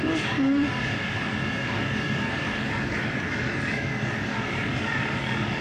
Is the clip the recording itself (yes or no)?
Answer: no